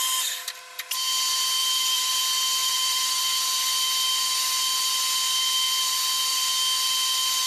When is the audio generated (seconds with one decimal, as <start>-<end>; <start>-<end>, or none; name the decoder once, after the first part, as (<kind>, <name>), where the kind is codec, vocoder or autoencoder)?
1.6-2.2 (vocoder, BigVGAN v2); 2.6-3.2